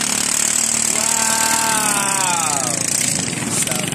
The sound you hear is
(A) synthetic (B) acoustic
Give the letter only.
B